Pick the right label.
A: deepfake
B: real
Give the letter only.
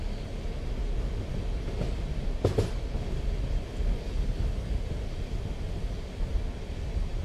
B